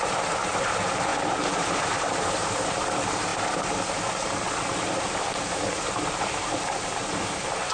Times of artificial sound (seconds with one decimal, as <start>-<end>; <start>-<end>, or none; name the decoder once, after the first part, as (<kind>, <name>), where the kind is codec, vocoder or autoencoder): 0.0-7.7 (vocoder, BigVGAN v2)